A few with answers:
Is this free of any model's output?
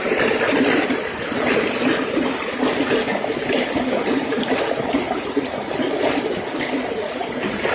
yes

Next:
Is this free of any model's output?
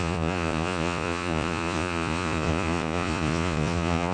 no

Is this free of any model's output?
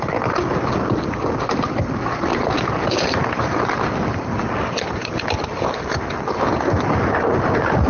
yes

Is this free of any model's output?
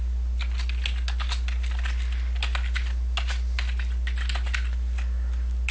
yes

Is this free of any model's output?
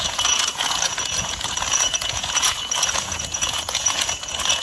no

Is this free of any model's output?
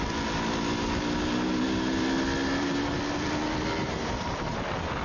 yes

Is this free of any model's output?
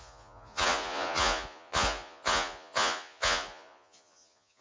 no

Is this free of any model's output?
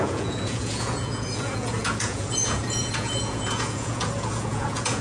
no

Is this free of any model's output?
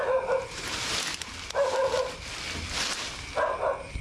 yes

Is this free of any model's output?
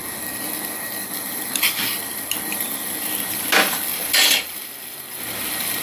yes